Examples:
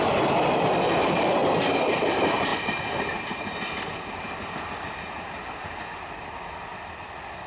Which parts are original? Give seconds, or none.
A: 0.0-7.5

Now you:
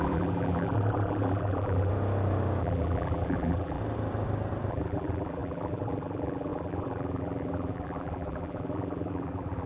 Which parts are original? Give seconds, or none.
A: 1.9-2.6; 3.8-4.7

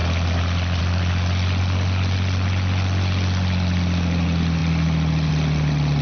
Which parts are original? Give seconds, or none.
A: 0.0-6.0

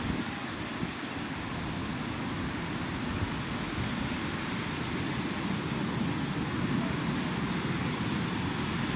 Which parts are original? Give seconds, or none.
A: 0.0-9.0

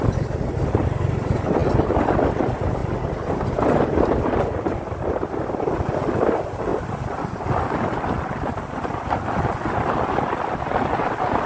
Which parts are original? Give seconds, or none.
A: 0.0-1.6; 2.3-6.7; 7.2-11.5

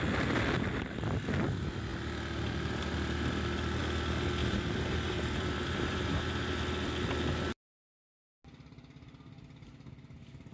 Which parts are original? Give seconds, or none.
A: 0.0-4.4; 6.5-10.5